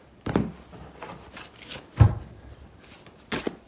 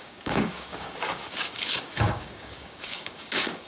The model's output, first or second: second